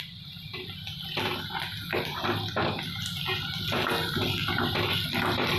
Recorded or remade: recorded